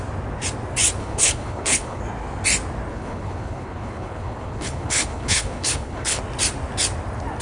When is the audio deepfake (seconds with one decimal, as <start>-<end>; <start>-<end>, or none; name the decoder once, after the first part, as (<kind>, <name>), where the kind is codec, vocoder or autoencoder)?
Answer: 1.0-2.0 (codec, HILCodec); 2.9-6.2